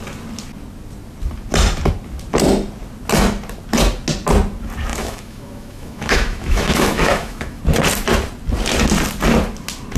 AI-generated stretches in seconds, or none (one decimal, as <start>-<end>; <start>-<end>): 4.9-7.6